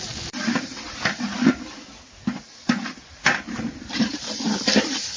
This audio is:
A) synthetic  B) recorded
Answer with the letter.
B